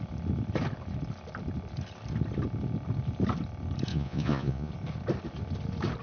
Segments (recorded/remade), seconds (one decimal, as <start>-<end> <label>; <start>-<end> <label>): 0.0-3.9 recorded; 3.9-4.7 remade; 4.7-6.0 recorded